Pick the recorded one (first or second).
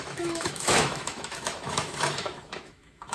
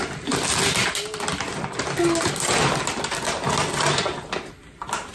second